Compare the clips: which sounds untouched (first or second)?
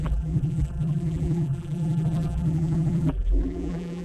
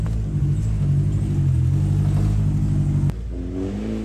second